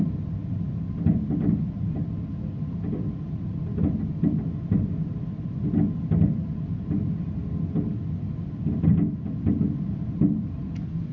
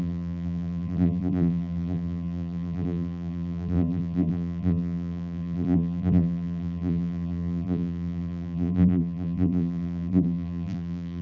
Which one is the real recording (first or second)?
first